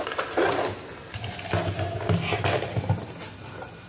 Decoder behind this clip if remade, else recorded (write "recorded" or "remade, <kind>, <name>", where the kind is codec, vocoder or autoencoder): recorded